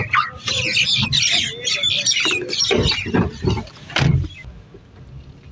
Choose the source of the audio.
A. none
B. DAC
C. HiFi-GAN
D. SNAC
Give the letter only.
A